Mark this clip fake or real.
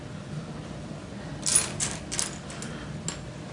real